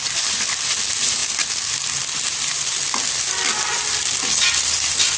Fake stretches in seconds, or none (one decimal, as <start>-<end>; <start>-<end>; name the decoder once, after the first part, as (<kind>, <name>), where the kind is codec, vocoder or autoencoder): none